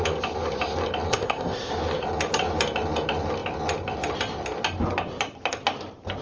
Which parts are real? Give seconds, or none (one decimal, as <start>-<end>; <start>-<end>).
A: 0.0-1.1; 1.7-6.2